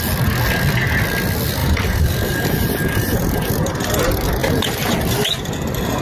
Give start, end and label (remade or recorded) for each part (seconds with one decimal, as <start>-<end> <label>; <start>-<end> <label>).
0.0-1.6 recorded; 1.6-3.5 remade; 3.5-4.4 recorded; 4.4-5.0 remade; 5.0-6.0 recorded

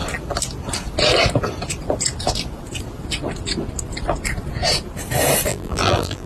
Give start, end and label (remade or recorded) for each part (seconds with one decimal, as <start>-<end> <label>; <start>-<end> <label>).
0.0-5.5 recorded; 5.5-6.3 remade

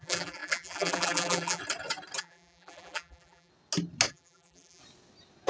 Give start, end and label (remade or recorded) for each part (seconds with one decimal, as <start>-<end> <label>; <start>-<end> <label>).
0.0-1.6 remade; 1.6-2.2 recorded; 2.2-3.5 remade; 3.5-4.1 recorded; 4.1-4.8 remade; 4.8-5.5 recorded

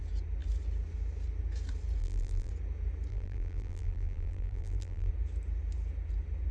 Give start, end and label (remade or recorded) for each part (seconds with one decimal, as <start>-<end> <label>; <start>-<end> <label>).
0.0-2.0 recorded; 2.0-2.5 remade; 2.5-3.1 recorded; 3.1-5.1 remade; 5.1-6.5 recorded

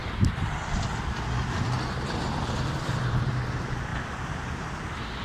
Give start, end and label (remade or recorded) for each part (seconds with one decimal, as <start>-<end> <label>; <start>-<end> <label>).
0.0-3.9 remade; 3.9-5.2 recorded

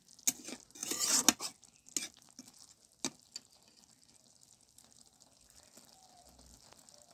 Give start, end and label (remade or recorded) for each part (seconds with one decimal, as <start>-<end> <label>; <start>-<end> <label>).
0.0-7.1 recorded